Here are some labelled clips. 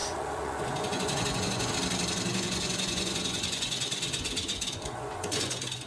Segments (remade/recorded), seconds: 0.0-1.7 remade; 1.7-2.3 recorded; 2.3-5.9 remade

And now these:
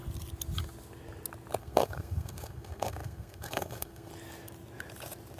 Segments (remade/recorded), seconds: 0.0-1.6 recorded; 1.6-4.1 remade; 4.1-5.4 recorded

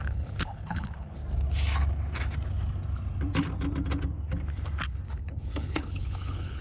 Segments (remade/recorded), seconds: 0.0-1.2 remade; 1.2-5.2 recorded; 5.2-6.6 remade

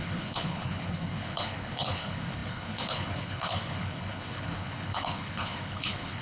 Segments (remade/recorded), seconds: 0.0-6.2 remade

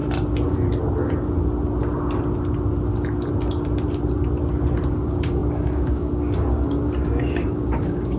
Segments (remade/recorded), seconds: 0.0-4.9 recorded; 4.9-8.2 remade